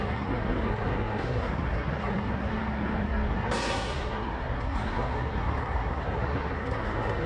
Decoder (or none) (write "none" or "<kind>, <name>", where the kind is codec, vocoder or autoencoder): codec, SNAC